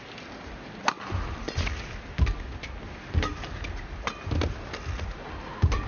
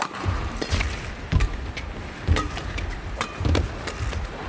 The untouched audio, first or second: first